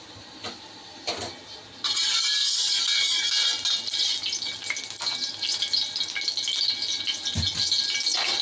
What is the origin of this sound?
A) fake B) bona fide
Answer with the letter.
B